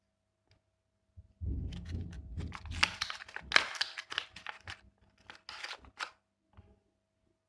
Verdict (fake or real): real